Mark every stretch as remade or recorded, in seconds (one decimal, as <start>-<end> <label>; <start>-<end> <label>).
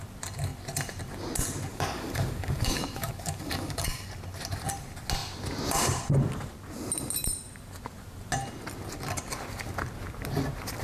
0.0-1.7 recorded; 1.7-4.1 remade; 4.1-10.8 recorded